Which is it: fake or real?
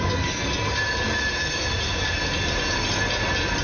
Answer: real